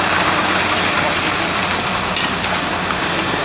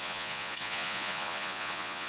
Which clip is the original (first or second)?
first